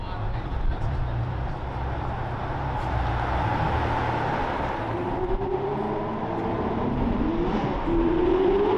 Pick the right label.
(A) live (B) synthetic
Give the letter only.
A